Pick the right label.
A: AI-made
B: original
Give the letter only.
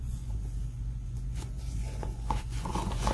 A